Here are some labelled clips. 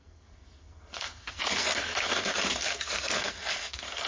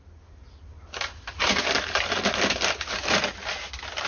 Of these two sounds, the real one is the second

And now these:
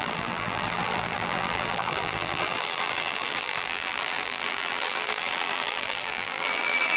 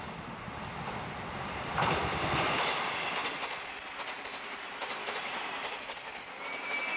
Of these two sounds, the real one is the second